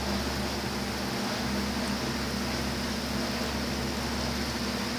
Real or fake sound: real